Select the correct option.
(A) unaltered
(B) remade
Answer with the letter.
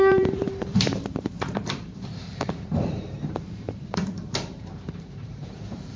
B